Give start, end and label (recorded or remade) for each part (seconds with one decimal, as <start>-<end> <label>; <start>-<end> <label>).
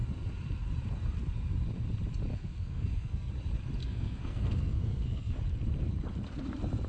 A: 0.0-2.3 recorded; 2.3-3.3 remade; 3.3-3.8 recorded; 3.8-5.4 remade; 5.4-6.9 recorded